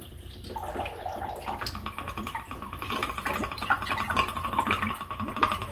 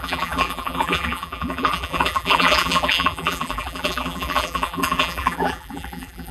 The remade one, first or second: second